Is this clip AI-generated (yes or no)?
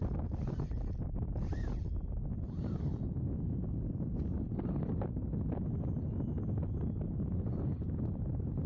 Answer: no